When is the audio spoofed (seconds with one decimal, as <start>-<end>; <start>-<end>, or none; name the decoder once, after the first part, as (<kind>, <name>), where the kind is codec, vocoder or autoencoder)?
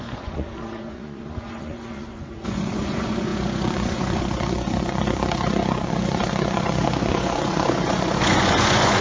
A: 0.0-9.0 (vocoder, Vocos)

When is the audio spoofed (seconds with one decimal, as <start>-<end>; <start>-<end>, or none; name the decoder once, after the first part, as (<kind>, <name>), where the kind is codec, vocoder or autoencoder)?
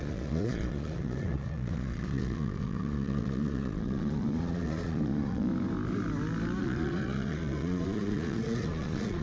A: 0.0-5.5 (vocoder, Vocos); 6.6-9.2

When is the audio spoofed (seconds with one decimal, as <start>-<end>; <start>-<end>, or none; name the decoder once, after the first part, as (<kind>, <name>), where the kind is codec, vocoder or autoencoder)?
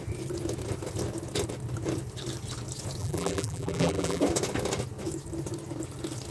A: 3.0-4.2 (vocoder, BigVGAN v2)